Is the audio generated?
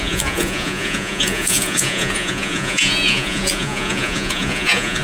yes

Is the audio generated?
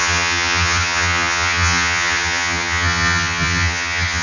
yes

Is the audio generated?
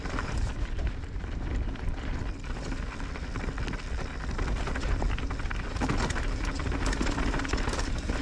no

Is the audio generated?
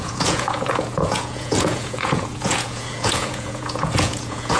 yes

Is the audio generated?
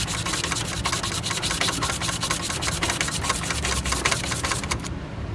no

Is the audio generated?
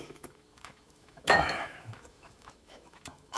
yes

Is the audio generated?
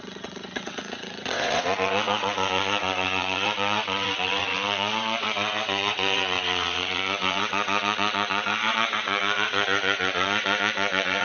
yes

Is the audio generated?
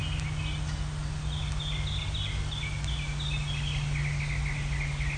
no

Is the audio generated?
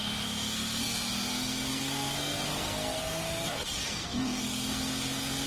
yes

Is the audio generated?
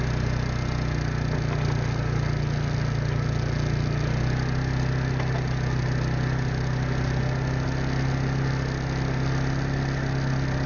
no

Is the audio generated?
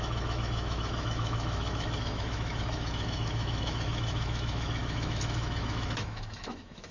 yes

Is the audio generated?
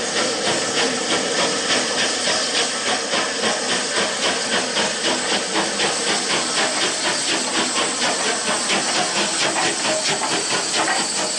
no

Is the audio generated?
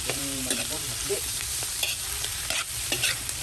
yes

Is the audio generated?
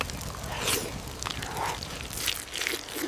no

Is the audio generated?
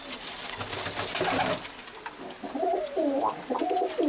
no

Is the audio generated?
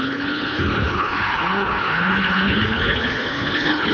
yes